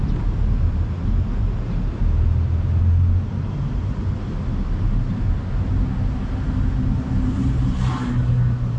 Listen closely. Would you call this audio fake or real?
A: real